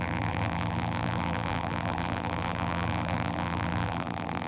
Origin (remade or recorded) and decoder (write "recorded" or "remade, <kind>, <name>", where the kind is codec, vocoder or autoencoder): remade, vocoder, BigVGAN v2